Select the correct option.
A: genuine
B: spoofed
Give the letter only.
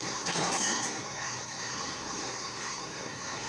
B